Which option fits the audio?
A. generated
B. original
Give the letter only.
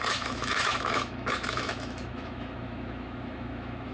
A